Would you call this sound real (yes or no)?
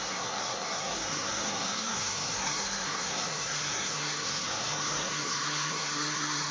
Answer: no